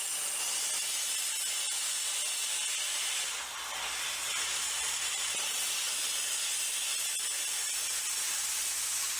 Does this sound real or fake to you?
real